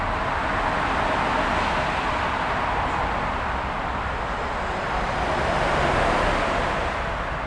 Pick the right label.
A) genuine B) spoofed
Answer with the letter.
A